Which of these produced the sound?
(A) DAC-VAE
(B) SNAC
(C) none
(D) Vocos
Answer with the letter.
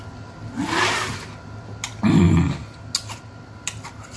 C